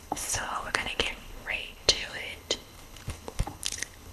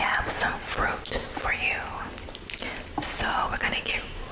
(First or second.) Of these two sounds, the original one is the second